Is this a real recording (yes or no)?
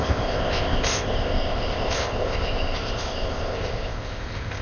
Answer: no